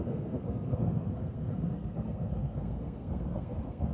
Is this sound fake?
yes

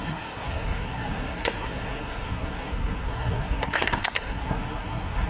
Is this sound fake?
yes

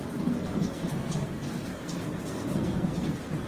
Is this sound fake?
yes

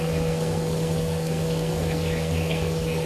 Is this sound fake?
yes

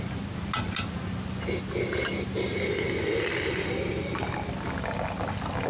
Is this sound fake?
no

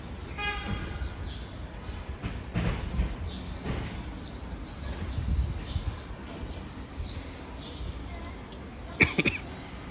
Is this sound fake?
no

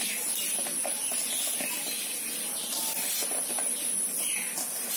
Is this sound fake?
no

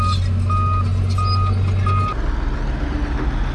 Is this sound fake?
no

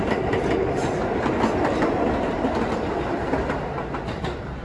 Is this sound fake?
no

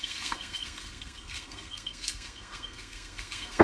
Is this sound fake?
yes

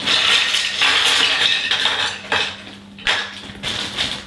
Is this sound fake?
no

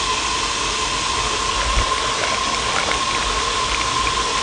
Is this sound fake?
no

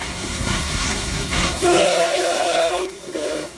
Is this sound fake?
yes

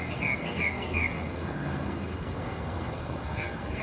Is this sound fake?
yes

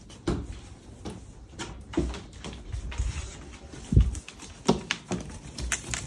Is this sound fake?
no